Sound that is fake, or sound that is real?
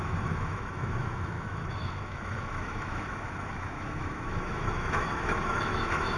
fake